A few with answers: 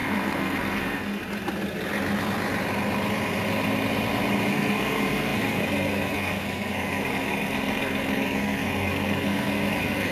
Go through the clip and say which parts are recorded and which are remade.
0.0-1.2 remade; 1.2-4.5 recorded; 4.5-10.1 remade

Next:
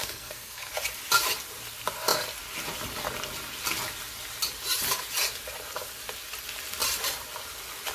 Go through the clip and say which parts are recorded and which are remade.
0.0-0.7 remade; 0.7-7.9 recorded

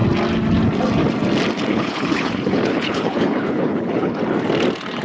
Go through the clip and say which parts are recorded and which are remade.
0.0-1.7 recorded; 1.7-4.2 remade; 4.2-5.0 recorded